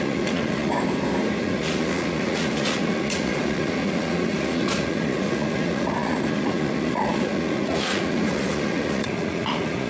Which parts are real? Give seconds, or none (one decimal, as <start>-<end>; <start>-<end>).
0.7-1.4